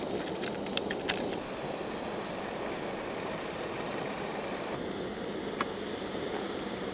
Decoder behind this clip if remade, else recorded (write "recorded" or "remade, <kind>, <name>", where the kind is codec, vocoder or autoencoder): recorded